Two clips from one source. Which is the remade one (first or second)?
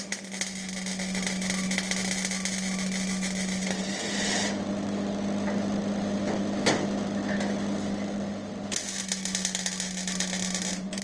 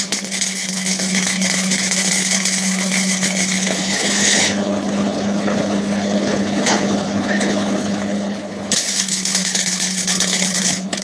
second